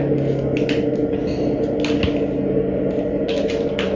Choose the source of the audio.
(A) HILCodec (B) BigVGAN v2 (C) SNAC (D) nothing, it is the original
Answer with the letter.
D